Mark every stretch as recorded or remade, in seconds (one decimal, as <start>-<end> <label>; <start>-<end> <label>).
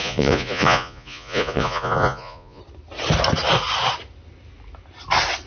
0.0-2.6 remade; 2.6-5.5 recorded